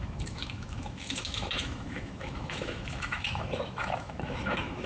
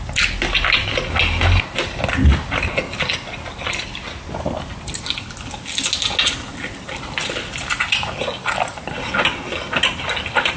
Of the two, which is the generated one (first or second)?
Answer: first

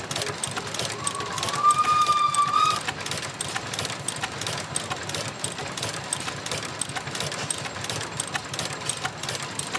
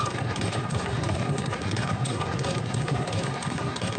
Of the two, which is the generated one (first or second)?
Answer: second